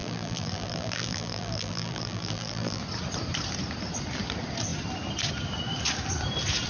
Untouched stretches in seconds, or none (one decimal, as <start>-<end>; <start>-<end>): 2.8-6.7